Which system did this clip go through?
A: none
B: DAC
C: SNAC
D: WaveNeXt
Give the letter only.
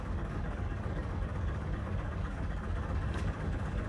B